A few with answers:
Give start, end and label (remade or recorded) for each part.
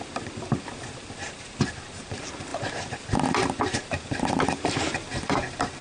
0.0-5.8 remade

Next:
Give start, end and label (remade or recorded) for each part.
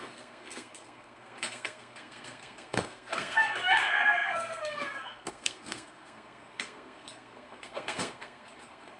0.0-9.0 remade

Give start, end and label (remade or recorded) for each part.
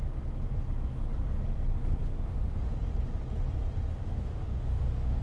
0.0-2.0 recorded; 2.0-2.7 remade; 2.7-3.9 recorded; 3.9-5.2 remade